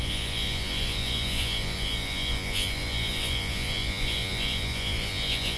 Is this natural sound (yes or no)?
no